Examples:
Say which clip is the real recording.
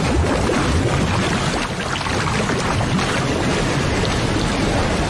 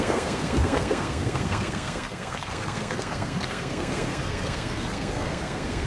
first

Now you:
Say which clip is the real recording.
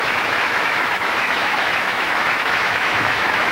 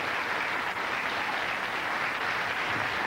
second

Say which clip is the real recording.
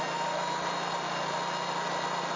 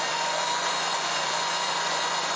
first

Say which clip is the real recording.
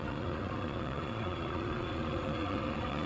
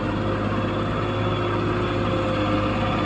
second